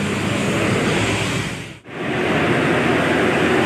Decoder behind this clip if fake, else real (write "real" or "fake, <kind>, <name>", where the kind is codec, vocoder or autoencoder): real